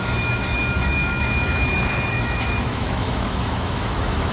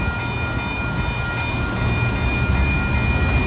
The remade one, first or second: first